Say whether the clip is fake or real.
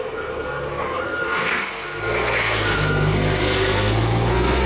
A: fake